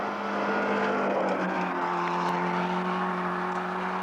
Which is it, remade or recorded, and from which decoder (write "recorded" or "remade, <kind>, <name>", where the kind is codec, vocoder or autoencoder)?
recorded